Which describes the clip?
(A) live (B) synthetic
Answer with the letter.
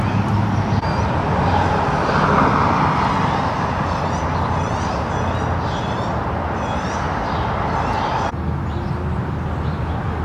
A